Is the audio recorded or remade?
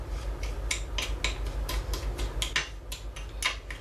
recorded